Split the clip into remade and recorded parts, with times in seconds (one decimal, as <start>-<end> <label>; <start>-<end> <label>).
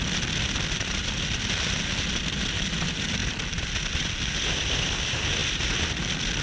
0.0-5.4 remade; 5.4-5.9 recorded; 5.9-6.4 remade